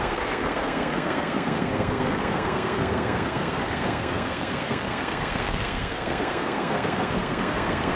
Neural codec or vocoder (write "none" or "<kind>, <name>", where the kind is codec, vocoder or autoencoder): codec, SNAC